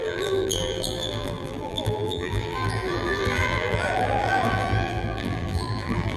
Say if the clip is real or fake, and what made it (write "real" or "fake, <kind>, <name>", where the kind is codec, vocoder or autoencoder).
fake, vocoder, BigVGAN v2